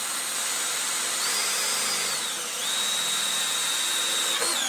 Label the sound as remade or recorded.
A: recorded